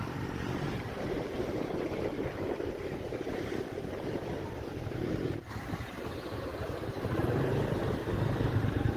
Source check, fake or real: fake